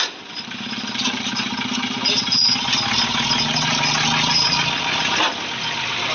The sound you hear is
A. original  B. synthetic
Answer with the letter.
A